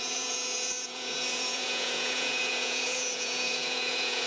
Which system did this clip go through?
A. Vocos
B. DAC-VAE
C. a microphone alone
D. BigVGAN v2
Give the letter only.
A